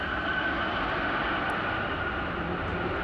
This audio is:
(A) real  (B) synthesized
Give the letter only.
A